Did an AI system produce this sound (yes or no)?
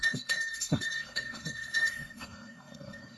yes